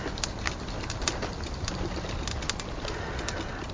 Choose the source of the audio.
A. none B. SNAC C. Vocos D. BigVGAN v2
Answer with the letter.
A